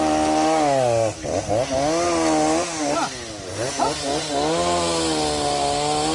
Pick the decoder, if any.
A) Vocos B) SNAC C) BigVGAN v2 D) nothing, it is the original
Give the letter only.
D